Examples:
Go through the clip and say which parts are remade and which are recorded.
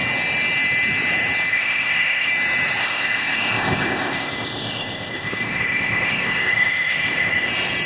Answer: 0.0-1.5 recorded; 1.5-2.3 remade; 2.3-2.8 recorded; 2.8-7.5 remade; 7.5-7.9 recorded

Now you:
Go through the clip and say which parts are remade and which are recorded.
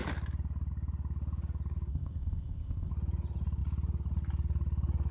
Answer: 0.0-1.9 recorded; 1.9-2.9 remade; 2.9-5.1 recorded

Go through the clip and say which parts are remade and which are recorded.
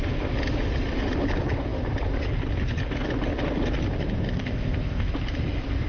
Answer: 0.0-4.3 recorded; 4.3-5.1 remade; 5.1-5.9 recorded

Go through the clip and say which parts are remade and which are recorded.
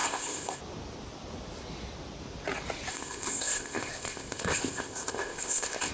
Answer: 0.0-0.6 remade; 0.6-2.9 recorded; 2.9-5.9 remade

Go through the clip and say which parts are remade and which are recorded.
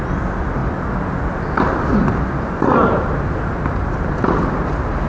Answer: 0.0-5.1 recorded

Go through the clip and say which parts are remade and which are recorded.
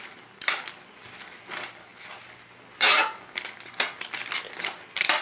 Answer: 0.0-5.2 recorded